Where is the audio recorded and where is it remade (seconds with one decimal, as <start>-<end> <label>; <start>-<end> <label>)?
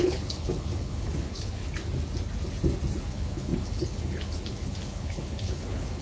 0.0-1.6 remade; 1.6-3.0 recorded; 3.0-6.0 remade